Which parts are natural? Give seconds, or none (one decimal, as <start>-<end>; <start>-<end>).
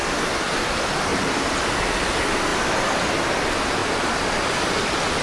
0.0-1.1; 1.9-2.5; 3.2-3.8; 4.4-5.2